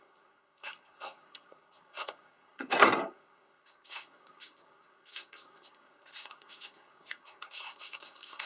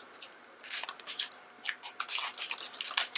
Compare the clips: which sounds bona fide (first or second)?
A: second